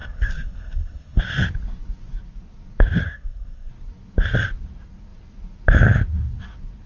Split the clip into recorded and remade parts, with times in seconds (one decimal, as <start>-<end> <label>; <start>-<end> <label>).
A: 0.0-1.2 remade; 1.2-3.0 recorded; 3.0-3.7 remade; 3.7-6.9 recorded